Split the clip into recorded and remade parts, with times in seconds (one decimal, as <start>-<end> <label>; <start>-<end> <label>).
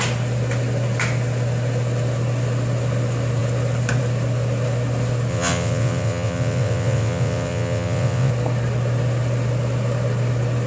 0.0-5.3 recorded; 5.3-8.3 remade; 8.3-10.7 recorded